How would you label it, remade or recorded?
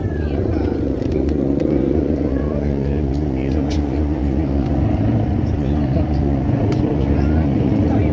remade